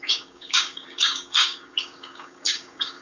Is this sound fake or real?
fake